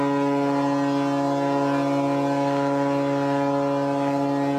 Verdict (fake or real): real